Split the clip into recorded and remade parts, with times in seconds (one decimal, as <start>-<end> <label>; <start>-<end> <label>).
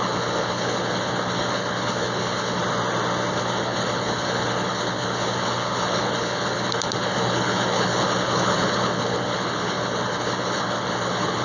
0.0-2.6 remade; 2.6-3.3 recorded; 3.3-11.4 remade